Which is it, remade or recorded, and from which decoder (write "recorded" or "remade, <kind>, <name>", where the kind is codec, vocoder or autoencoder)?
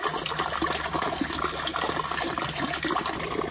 recorded